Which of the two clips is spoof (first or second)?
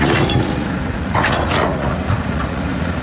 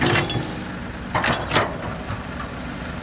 first